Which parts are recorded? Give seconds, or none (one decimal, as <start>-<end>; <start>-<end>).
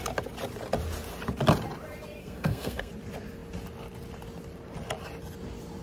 0.0-2.2; 2.9-5.8